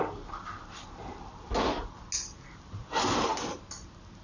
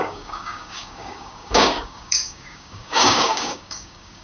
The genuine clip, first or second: first